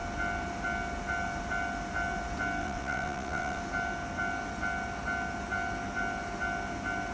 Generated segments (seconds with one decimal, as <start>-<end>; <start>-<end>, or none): 2.6-3.6